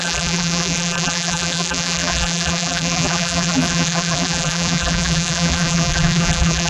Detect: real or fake fake